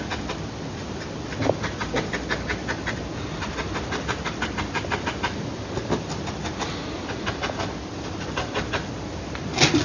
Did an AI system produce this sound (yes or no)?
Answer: no